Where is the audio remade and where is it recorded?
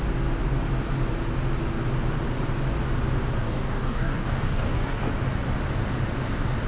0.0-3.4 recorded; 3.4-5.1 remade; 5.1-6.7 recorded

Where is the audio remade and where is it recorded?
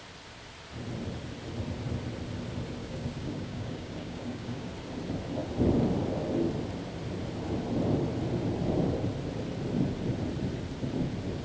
0.0-2.8 recorded; 2.8-4.7 remade; 4.7-11.4 recorded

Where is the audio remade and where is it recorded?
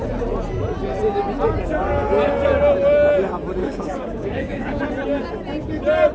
0.0-3.6 recorded; 3.6-4.8 remade; 4.8-6.1 recorded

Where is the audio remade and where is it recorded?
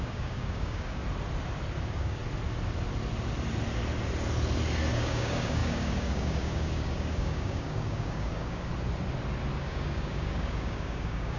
0.0-1.0 remade; 1.0-1.8 recorded; 1.8-2.2 remade; 2.2-4.9 recorded; 4.9-8.7 remade; 8.7-9.6 recorded; 9.6-11.4 remade